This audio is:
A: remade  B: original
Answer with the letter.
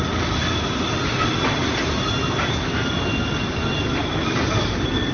B